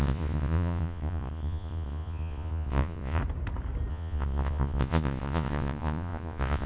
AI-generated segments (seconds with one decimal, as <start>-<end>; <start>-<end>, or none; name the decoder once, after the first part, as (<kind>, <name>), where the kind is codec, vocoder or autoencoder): 0.0-3.2 (vocoder, Vocos); 3.9-6.7

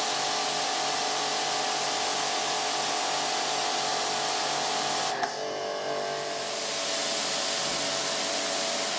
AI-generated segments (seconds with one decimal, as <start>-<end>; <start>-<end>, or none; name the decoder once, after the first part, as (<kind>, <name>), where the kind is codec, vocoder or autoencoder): none

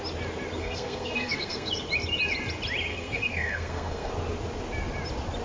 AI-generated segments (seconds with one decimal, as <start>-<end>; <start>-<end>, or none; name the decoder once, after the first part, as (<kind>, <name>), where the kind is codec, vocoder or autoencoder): 0.6-1.7 (codec, SNAC); 2.9-4.1